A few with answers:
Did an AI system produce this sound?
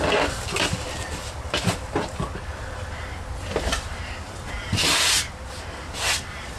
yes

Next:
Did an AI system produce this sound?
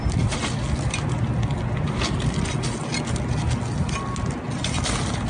no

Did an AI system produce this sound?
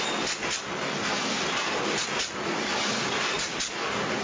yes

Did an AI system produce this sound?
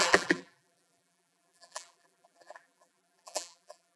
yes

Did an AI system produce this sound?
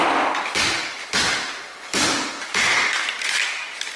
no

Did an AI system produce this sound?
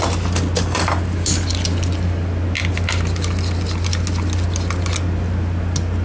no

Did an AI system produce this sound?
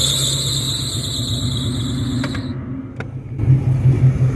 no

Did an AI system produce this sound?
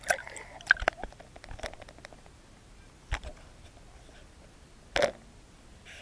no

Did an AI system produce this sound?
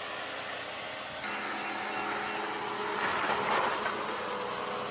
no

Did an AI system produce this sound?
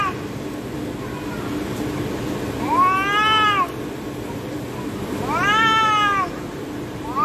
no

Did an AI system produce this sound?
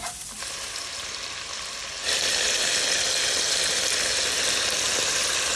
no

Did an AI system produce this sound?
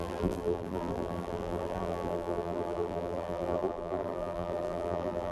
yes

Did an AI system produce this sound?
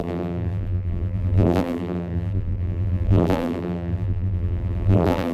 yes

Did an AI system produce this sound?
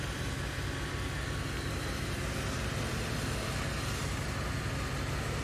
no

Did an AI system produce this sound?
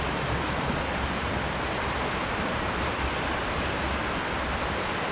no